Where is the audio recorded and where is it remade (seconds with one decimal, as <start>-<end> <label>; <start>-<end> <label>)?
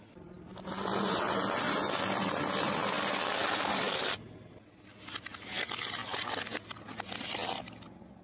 0.0-8.2 recorded